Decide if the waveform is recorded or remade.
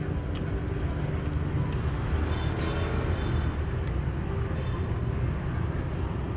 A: recorded